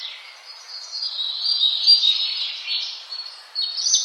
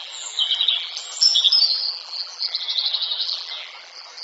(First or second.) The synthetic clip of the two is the second